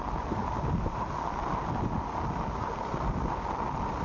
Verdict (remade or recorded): recorded